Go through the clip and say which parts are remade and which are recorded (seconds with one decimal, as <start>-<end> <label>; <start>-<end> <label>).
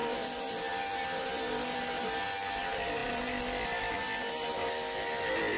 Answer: 0.0-5.6 recorded